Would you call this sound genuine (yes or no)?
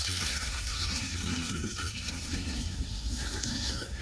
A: no